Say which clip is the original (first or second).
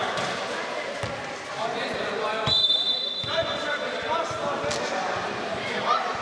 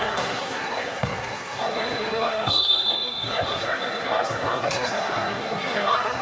first